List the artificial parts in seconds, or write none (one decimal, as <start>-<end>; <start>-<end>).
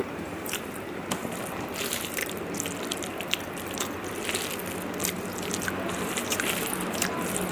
0.0-2.2; 5.1-7.5